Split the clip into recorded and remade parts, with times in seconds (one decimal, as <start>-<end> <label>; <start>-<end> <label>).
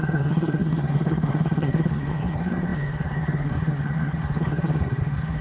0.0-5.4 remade